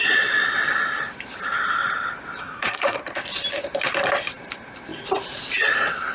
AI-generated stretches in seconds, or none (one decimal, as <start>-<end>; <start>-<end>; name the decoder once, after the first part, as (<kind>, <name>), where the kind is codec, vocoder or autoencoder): 2.4-3.0 (codec, SNAC)